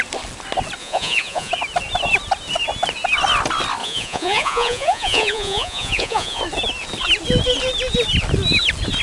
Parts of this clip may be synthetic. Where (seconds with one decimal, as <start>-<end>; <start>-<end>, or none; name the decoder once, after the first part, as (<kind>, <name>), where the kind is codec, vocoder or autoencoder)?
0.8-1.5 (vocoder, Vocos); 3.8-6.4